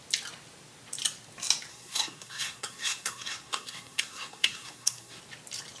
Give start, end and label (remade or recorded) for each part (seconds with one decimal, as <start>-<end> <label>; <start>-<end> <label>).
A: 0.0-1.7 recorded; 1.7-5.2 remade; 5.2-5.8 recorded

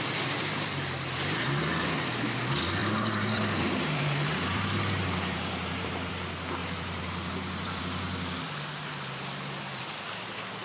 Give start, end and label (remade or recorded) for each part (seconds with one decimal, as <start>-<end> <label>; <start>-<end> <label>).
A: 0.0-2.8 recorded; 2.8-6.1 remade; 6.1-6.6 recorded; 6.6-7.8 remade; 7.8-10.6 recorded

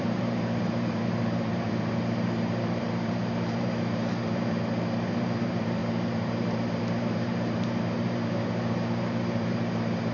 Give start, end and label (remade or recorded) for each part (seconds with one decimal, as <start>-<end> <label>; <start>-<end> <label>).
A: 0.0-10.1 remade

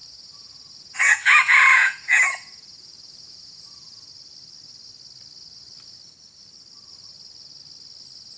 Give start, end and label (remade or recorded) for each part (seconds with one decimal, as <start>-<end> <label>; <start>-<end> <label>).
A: 0.0-4.1 remade; 4.1-8.4 recorded